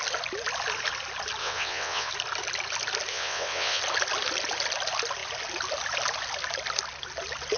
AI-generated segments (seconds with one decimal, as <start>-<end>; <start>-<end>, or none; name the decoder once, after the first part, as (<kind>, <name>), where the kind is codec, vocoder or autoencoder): 1.4-2.1 (vocoder, WaveNeXt); 3.1-3.8